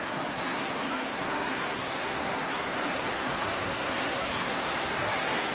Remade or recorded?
remade